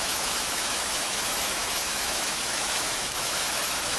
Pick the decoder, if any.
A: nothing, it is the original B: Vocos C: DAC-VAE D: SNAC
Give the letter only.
C